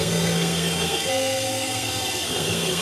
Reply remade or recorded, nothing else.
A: remade